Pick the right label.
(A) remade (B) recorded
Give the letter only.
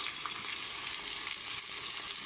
B